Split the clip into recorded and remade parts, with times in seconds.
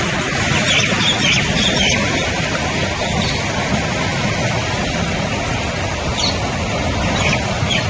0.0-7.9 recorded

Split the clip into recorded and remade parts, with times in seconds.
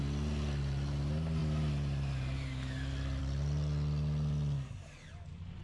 0.0-5.6 recorded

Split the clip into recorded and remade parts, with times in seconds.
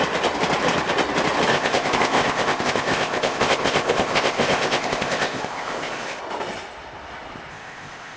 0.0-1.5 recorded; 1.5-6.2 remade; 6.2-7.5 recorded; 7.5-8.2 remade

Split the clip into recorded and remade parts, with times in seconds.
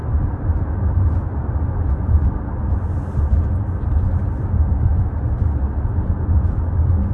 0.0-7.1 recorded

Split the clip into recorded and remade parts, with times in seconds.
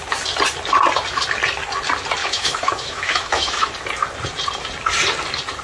0.0-2.2 recorded; 2.2-3.7 remade; 3.7-5.6 recorded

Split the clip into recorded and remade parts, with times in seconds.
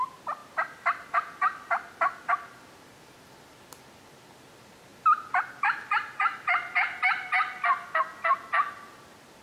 0.0-0.4 recorded; 0.4-3.8 remade; 3.8-9.4 recorded